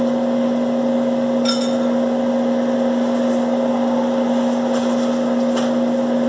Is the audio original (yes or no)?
yes